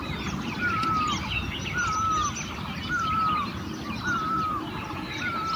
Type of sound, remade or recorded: recorded